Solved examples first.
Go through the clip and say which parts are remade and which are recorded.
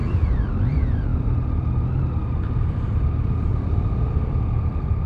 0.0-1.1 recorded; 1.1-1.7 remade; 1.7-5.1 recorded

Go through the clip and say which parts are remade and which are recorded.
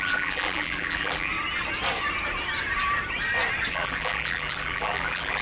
0.0-1.3 remade; 1.3-3.7 recorded; 3.7-5.4 remade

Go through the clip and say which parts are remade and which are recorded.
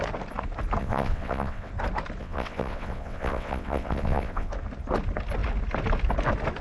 0.0-0.8 recorded; 0.8-1.7 remade; 1.7-2.2 recorded; 2.2-4.5 remade; 4.5-6.6 recorded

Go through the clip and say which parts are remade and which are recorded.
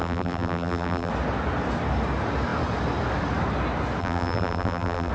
0.0-1.1 remade; 1.1-4.0 recorded; 4.0-5.1 remade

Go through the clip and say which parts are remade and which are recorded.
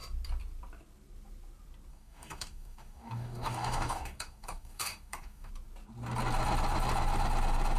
0.0-1.9 recorded; 1.9-5.5 remade; 5.5-7.8 recorded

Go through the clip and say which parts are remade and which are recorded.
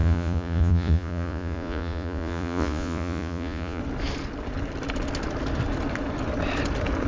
0.0-3.8 remade; 3.8-7.1 recorded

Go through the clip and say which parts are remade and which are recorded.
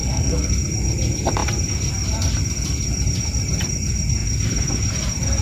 0.0-0.5 remade; 0.5-5.4 recorded